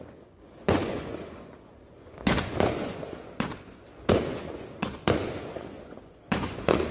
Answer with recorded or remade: remade